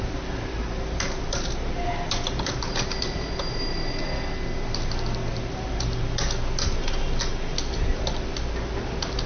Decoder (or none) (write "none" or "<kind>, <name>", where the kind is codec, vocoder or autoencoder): none